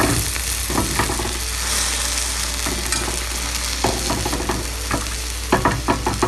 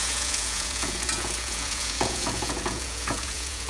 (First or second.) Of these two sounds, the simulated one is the second